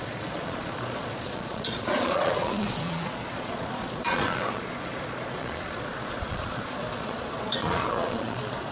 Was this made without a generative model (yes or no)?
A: no